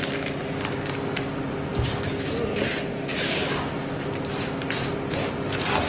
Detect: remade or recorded recorded